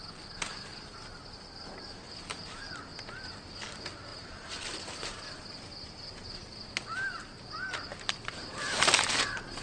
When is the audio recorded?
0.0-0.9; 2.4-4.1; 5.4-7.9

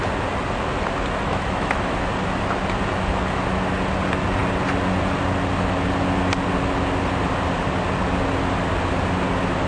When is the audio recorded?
0.0-1.3; 2.1-9.7

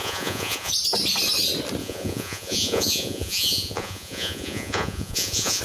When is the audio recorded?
0.7-1.8

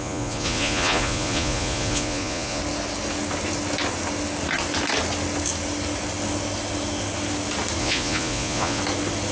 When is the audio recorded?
2.6-7.8; 8.8-9.3

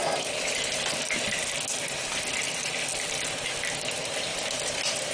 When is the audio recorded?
1.0-4.3

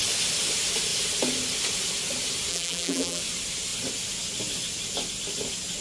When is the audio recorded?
0.0-2.5; 3.2-5.8